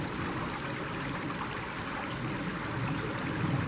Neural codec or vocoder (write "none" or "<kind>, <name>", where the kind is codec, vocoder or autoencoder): none